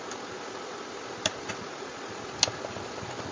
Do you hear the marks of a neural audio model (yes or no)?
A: no